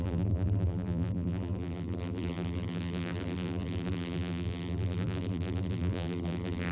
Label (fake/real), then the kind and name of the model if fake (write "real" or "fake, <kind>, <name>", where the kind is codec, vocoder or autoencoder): fake, vocoder, BigVGAN v2